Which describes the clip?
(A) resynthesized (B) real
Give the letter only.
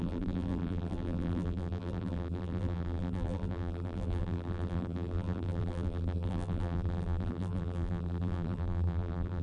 A